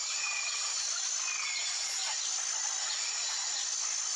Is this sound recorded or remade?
recorded